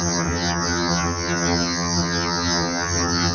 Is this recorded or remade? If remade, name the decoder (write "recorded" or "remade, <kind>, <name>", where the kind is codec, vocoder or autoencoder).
remade, vocoder, HiFi-GAN